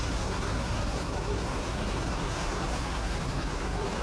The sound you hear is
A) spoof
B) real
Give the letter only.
A